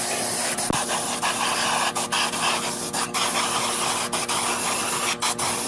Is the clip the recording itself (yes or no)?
yes